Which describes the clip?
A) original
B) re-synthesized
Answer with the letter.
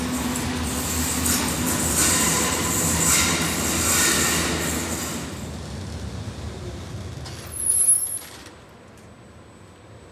A